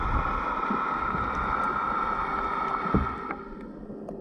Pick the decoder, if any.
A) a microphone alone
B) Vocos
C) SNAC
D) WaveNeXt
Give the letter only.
A